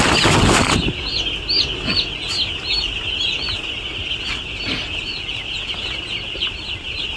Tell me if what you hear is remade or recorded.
recorded